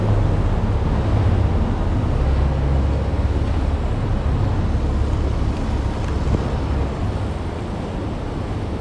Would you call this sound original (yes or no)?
yes